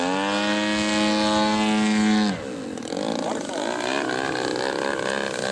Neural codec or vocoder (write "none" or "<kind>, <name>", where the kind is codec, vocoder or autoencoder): none